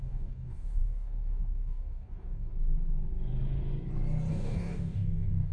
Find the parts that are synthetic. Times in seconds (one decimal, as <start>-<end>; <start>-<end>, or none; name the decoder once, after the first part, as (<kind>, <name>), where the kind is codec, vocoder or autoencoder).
0.0-2.5 (codec, DAC); 4.3-5.5